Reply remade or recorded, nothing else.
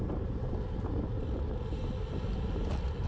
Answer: recorded